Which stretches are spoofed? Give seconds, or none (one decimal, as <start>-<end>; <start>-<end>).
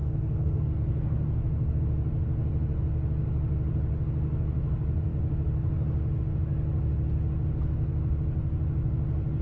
0.0-1.8